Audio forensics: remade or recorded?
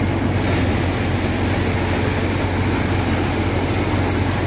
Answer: recorded